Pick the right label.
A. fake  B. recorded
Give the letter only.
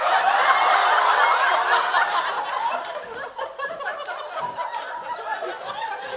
B